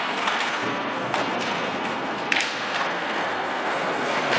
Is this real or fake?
fake